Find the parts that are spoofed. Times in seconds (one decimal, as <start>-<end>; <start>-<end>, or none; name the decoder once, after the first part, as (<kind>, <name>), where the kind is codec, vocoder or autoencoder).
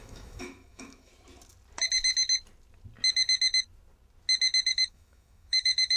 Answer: 0.0-1.1 (autoencoder, DAC-VAE); 4.7-6.0